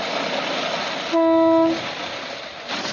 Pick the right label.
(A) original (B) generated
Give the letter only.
A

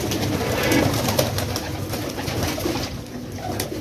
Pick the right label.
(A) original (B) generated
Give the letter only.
A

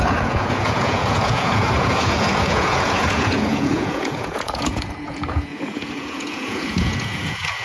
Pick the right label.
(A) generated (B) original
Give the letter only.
A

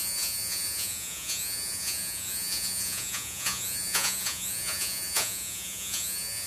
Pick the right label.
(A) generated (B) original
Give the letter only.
A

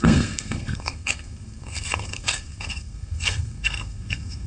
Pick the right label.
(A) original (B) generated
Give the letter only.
B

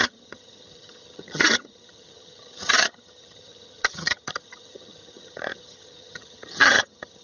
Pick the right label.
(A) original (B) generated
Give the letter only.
B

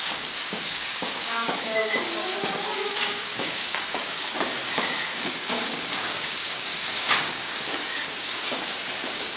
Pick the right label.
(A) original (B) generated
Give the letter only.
B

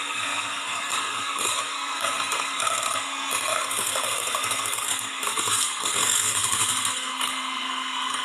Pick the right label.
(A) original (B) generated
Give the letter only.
B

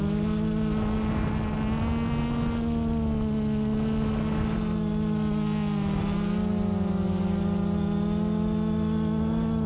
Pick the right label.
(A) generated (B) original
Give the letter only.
B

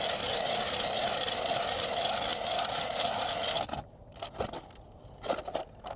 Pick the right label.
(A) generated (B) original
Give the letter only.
B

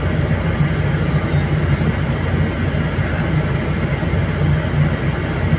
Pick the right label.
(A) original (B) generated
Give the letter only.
A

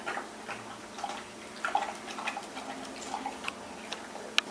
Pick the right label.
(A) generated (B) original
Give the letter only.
B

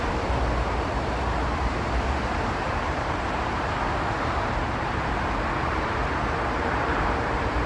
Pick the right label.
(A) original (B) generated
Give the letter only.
B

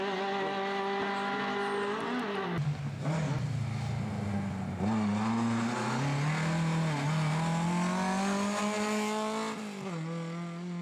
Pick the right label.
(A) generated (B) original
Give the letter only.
B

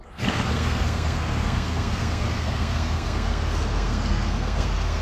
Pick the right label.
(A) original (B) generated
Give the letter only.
B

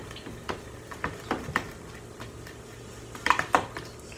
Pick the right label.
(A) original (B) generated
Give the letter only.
A